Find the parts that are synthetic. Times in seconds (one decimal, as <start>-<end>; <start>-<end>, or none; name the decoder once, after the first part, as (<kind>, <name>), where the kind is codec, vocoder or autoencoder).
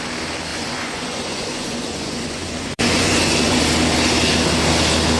0.5-3.6 (vocoder, Vocos)